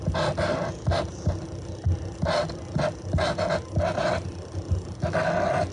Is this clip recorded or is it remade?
recorded